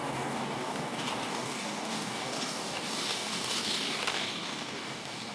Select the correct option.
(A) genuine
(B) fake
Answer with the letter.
B